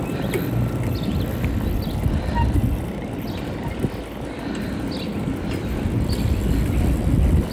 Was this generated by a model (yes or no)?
no